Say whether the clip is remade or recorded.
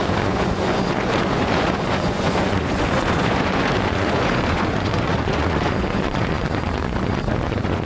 remade